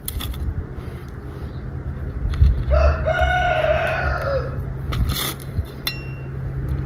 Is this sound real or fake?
real